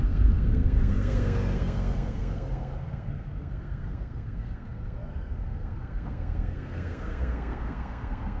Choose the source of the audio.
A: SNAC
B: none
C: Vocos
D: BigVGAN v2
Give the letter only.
A